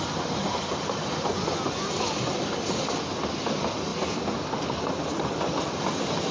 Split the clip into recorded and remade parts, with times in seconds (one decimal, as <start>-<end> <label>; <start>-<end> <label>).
0.0-1.0 recorded; 1.0-2.0 remade; 2.0-6.3 recorded